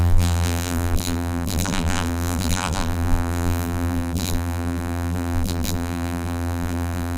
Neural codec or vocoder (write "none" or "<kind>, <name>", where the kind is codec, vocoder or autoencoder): vocoder, BigVGAN v2